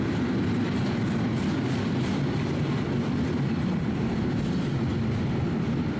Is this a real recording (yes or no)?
yes